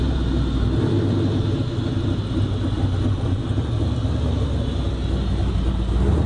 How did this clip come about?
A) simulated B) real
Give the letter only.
B